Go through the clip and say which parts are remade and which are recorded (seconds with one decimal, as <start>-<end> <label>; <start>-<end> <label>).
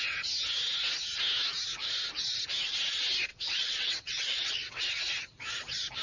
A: 0.0-3.3 recorded; 3.3-4.8 remade; 4.8-6.0 recorded